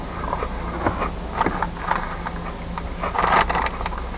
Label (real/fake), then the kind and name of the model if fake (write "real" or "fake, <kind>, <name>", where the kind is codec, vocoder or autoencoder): real